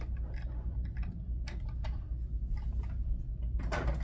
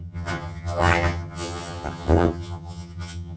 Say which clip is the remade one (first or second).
second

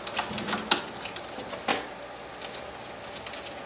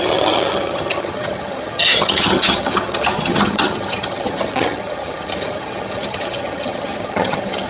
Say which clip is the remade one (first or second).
second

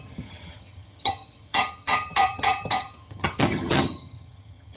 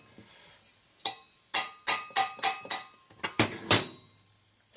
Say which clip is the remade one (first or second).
first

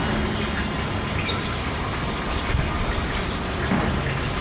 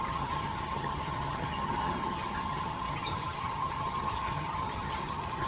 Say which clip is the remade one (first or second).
second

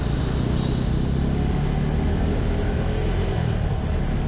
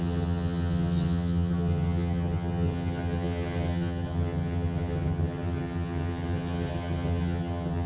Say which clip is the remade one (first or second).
second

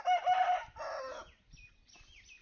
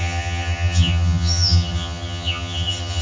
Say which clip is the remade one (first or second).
second